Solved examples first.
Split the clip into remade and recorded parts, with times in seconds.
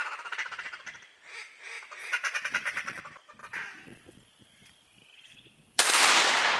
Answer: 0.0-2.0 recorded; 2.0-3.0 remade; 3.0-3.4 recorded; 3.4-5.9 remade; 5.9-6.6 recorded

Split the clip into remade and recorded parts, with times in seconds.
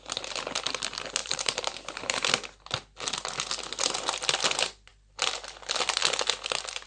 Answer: 0.0-1.2 recorded; 1.2-2.3 remade; 2.3-6.9 recorded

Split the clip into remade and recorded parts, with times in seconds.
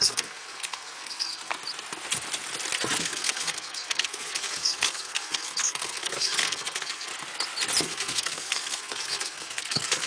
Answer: 0.0-1.5 remade; 1.5-3.0 recorded; 3.0-7.1 remade; 7.1-7.8 recorded; 7.8-10.1 remade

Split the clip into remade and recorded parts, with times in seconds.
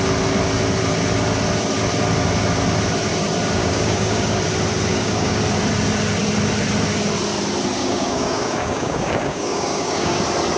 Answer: 0.0-3.6 recorded; 3.6-4.4 remade; 4.4-4.9 recorded; 4.9-5.4 remade; 5.4-7.8 recorded; 7.8-10.2 remade; 10.2-10.6 recorded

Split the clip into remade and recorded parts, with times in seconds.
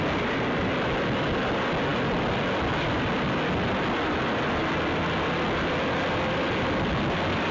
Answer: 0.0-7.5 recorded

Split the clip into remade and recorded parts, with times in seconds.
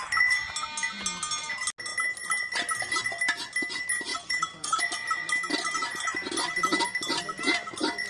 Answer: 0.0-4.1 recorded; 4.1-4.8 remade; 4.8-8.1 recorded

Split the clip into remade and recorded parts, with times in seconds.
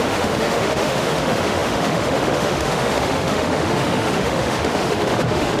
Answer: 0.0-5.6 remade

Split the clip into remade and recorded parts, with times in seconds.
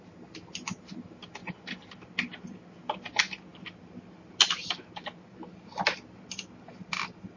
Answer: 0.0-7.4 recorded